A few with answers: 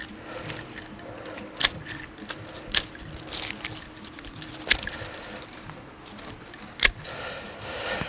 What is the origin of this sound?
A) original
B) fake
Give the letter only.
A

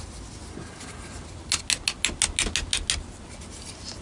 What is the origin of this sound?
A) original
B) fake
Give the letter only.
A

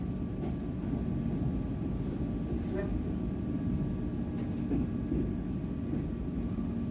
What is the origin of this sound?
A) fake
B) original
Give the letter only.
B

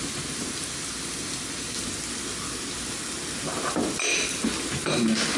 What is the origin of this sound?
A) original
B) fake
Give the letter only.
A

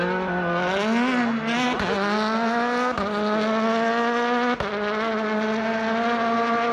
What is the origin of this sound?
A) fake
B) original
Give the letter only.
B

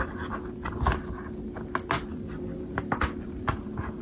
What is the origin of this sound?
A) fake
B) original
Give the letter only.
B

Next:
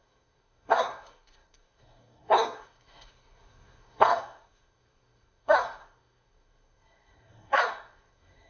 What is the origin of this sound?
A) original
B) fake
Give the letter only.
B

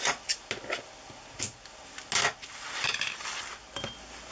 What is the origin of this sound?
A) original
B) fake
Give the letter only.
A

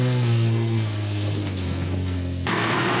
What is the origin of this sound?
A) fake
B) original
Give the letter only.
A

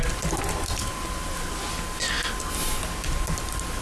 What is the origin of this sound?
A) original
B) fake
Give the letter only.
A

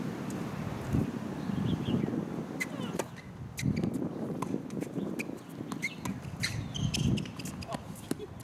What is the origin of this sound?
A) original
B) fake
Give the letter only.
A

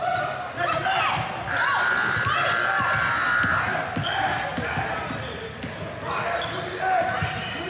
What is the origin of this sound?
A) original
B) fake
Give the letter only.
A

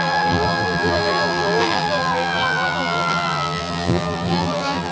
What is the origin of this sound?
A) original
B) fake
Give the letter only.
B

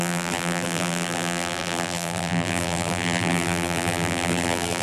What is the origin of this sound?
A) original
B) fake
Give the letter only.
B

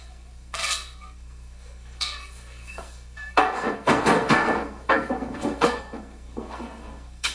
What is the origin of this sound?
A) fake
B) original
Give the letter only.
A